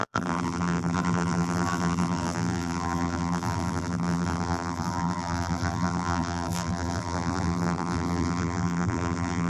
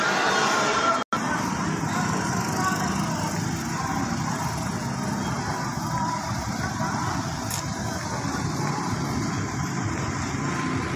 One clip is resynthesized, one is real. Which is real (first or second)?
second